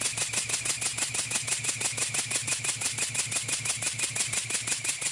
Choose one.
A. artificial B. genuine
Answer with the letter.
B